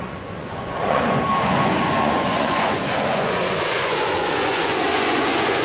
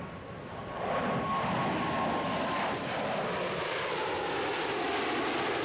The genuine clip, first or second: second